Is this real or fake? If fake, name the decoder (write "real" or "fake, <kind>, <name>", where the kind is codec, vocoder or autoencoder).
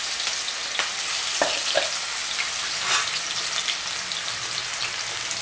real